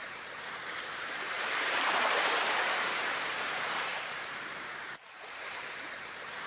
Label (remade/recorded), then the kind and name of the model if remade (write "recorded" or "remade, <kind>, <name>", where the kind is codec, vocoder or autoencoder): remade, vocoder, BigVGAN v2